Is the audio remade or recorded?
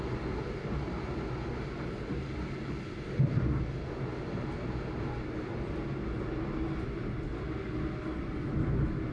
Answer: recorded